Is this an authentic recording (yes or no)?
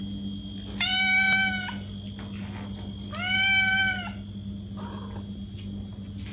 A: yes